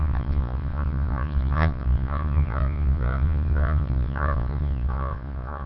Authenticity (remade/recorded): remade